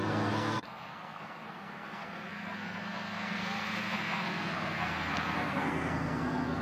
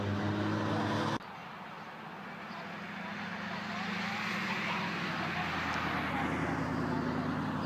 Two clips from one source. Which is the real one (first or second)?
second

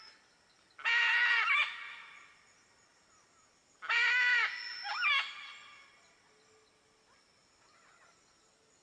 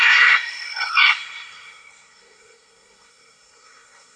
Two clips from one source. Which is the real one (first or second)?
first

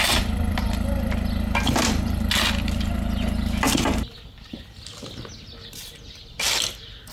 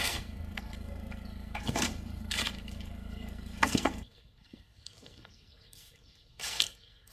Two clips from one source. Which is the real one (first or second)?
first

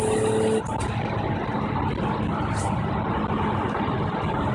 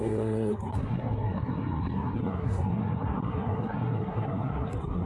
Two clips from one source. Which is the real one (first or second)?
first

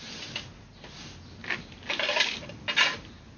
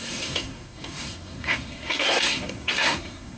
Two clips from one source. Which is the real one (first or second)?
first